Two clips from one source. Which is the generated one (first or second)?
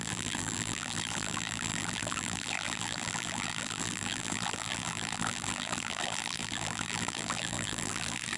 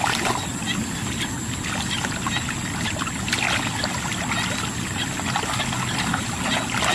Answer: first